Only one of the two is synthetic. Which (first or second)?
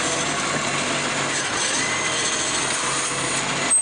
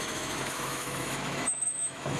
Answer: second